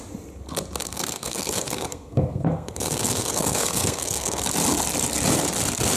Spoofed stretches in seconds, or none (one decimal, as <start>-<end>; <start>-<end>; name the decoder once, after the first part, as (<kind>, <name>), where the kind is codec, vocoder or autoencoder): 0.8-4.4 (codec, SNAC)